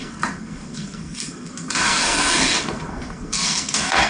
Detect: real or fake fake